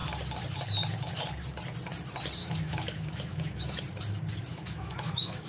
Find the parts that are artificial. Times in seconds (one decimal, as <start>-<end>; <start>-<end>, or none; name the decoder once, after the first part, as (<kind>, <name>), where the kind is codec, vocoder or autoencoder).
2.4-3.8 (autoencoder, DAC-VAE); 4.5-5.5